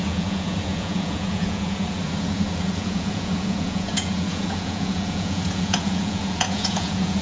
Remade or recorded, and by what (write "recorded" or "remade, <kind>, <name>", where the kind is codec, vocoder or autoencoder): remade, vocoder, Vocos